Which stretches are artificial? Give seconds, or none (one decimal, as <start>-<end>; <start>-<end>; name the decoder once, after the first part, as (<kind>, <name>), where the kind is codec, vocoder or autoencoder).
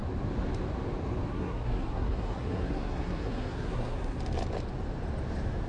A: 1.3-4.2 (codec, SNAC)